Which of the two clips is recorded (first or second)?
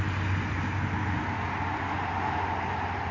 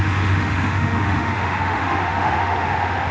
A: first